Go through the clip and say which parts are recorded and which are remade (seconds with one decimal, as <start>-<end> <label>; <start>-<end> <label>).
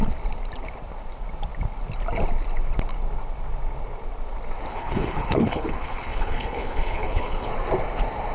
0.0-4.7 recorded; 4.7-7.5 remade; 7.5-8.3 recorded